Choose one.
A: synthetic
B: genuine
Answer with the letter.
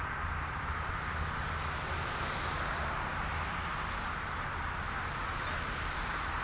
B